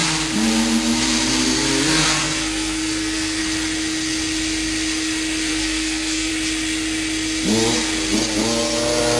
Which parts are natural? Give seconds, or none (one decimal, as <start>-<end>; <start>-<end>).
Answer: 0.0-1.9; 3.4-5.5; 6.3-9.2